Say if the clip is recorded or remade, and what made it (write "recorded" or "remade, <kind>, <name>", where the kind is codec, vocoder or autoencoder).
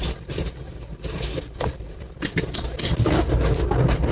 recorded